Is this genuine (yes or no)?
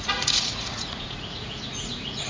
no